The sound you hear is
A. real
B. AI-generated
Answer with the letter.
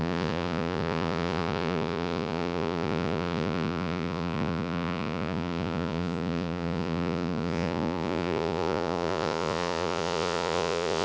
B